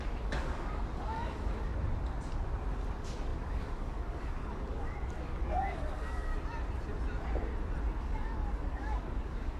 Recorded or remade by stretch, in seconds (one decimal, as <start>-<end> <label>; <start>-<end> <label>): 0.0-1.7 remade; 1.7-2.9 recorded; 2.9-6.3 remade; 6.3-8.0 recorded; 8.0-9.6 remade